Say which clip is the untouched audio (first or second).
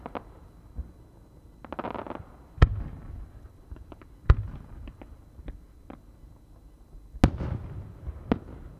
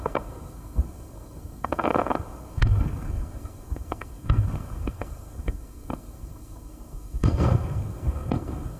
first